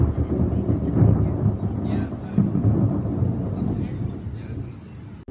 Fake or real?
real